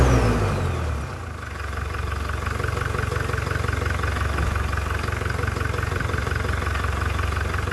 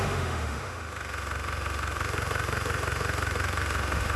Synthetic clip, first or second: second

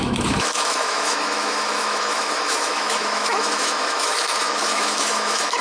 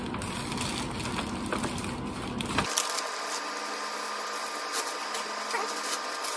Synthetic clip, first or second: first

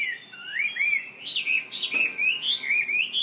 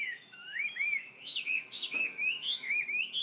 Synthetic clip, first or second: second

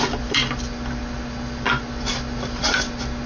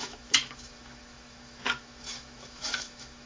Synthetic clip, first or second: second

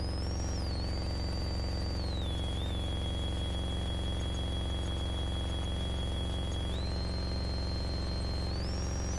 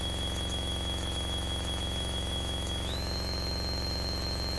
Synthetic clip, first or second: second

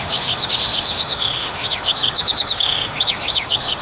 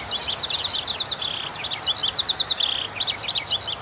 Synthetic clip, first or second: first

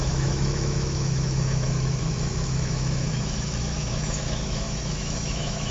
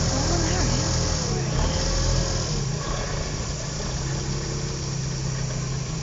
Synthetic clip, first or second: first